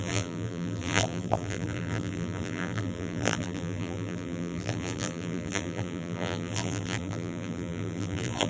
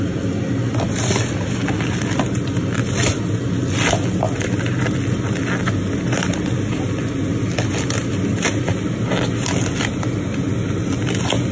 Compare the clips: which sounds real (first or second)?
second